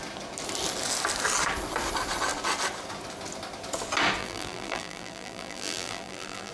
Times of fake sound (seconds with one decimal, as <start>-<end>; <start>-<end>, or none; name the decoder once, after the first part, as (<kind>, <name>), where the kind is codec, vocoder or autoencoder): 4.2-6.5 (vocoder, BigVGAN v2)